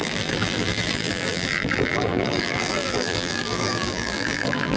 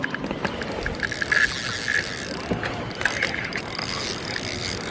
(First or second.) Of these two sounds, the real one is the second